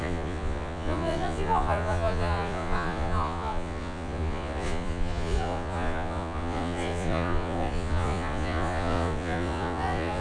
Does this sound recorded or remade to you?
remade